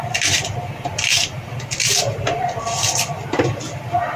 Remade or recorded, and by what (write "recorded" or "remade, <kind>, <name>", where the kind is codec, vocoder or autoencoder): recorded